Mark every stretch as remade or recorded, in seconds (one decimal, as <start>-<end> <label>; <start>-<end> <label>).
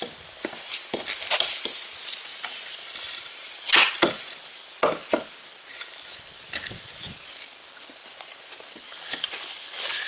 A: 0.0-10.1 recorded